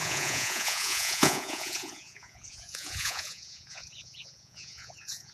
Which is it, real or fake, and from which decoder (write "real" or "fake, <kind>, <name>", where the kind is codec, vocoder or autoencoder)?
fake, vocoder, Vocos